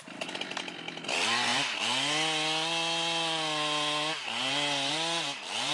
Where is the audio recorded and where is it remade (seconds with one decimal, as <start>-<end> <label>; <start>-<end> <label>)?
0.0-5.7 recorded